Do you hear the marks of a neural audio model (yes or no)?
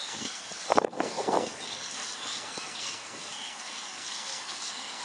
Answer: yes